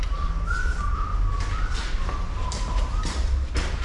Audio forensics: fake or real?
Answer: real